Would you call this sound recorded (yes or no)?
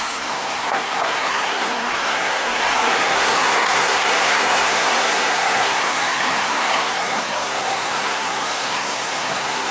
no